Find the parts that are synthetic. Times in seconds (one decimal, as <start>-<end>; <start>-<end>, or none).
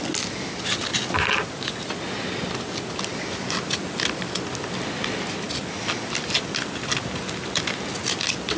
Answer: none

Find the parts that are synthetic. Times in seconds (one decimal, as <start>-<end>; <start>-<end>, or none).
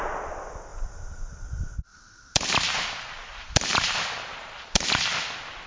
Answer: 0.7-1.2; 1.9-4.9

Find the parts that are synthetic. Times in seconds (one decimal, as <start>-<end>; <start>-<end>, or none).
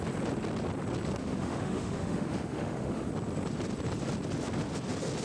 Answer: 1.2-3.1